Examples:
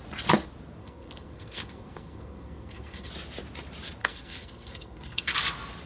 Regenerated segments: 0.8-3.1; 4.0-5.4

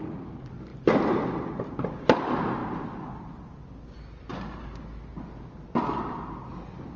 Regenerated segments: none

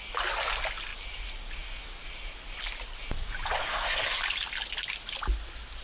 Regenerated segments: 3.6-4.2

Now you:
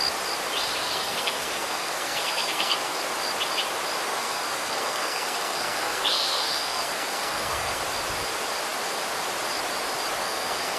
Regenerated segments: 0.8-3.0; 4.1-7.8; 10.2-10.8

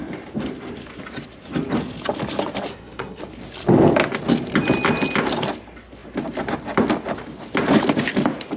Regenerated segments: 2.7-3.2

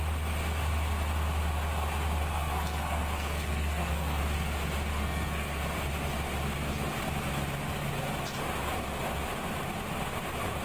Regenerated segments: 2.3-4.2; 4.9-5.6

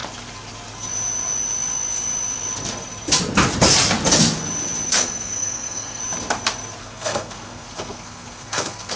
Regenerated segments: 4.9-6.0; 6.8-9.0